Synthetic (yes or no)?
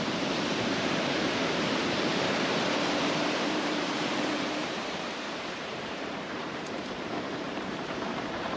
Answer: yes